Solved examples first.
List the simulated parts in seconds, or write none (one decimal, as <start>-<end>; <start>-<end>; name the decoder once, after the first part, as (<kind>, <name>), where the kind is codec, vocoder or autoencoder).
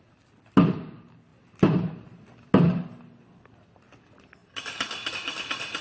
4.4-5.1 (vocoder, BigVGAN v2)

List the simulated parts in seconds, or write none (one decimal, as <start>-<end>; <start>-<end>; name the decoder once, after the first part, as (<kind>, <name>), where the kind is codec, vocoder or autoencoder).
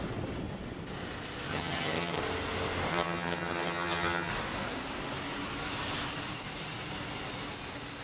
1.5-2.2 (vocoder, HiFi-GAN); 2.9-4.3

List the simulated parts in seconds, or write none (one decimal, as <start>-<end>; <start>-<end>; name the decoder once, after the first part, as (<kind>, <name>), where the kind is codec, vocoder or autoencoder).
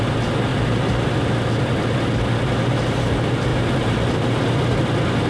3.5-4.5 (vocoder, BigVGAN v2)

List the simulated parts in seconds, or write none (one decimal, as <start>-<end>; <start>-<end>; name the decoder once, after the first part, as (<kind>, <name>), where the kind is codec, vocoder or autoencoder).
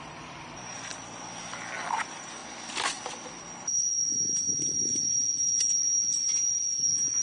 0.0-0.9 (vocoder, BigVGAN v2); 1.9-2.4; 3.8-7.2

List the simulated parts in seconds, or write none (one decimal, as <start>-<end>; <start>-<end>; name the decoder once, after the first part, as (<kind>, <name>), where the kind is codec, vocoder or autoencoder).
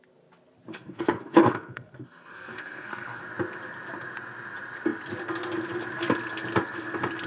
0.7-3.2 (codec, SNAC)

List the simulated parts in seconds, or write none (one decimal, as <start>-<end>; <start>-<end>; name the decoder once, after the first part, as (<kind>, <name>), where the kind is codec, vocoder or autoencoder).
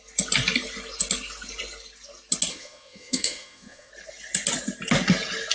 2.5-3.9 (autoencoder, DAC-VAE)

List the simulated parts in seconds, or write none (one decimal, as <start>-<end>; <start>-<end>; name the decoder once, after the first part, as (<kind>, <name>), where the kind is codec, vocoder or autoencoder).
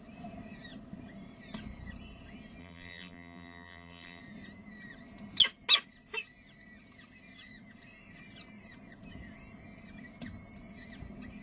2.6-4.2 (vocoder, BigVGAN v2)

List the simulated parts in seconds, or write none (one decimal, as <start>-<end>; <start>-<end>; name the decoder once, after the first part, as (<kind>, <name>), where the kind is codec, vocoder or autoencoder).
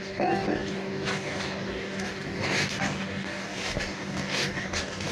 0.0-5.1 (codec, DAC)